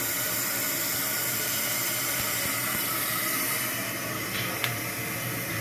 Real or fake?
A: real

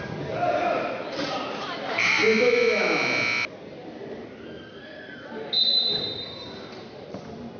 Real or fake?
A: real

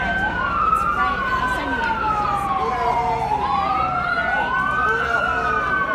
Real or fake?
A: real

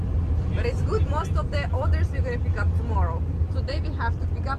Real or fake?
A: real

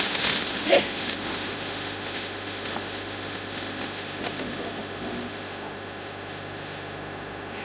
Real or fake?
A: fake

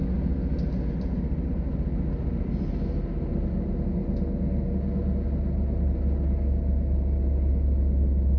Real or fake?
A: real